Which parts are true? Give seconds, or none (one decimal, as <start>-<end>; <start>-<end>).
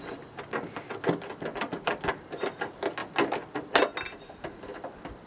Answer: 0.0-5.3